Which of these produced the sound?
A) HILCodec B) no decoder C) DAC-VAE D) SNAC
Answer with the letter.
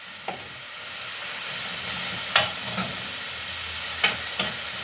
B